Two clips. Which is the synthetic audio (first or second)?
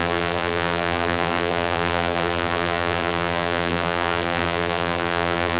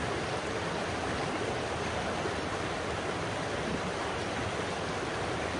first